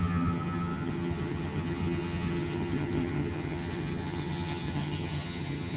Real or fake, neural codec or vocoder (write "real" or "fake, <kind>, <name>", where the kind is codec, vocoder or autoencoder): fake, vocoder, HiFi-GAN